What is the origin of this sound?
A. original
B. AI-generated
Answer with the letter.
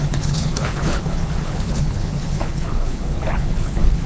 B